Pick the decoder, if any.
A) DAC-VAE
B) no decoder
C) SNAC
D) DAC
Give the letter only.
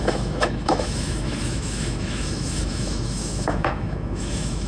A